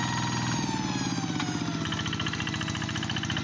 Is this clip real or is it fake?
real